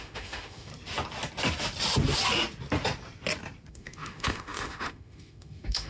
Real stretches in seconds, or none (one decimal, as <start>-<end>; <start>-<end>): 0.7-3.7